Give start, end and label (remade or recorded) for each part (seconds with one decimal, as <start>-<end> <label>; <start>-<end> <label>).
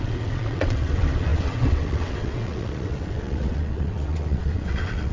0.0-5.1 remade